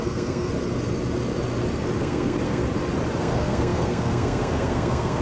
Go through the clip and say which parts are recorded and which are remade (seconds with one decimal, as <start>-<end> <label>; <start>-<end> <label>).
0.0-0.5 remade; 0.5-2.0 recorded; 2.0-2.6 remade; 2.6-3.2 recorded; 3.2-5.2 remade